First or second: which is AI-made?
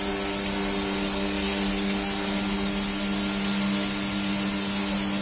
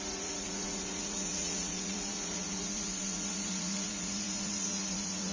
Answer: second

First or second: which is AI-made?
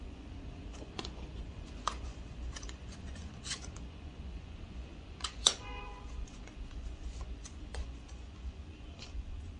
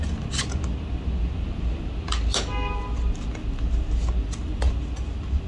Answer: first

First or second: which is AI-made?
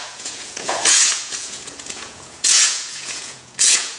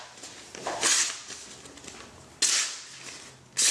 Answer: first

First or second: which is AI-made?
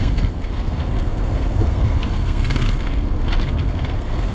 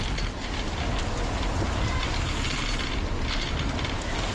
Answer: first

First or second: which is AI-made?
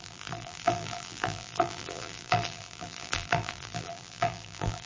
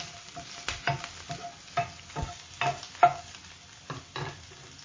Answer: first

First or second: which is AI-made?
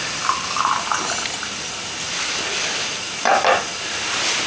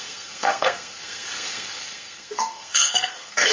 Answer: second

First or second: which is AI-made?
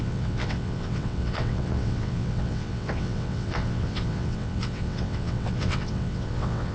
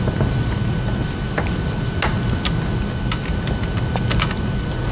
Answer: first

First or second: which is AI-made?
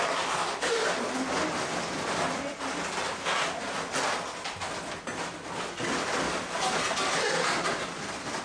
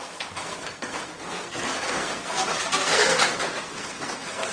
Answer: second